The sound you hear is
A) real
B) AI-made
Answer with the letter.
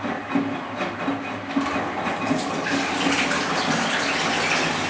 A